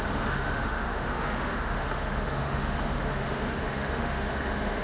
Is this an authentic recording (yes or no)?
no